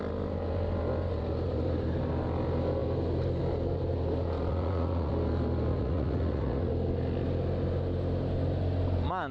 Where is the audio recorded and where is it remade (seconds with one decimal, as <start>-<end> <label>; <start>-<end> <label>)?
0.0-4.5 recorded; 4.5-5.1 remade; 5.1-5.7 recorded; 5.7-6.7 remade; 6.7-9.3 recorded